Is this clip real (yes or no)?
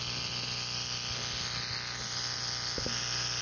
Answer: yes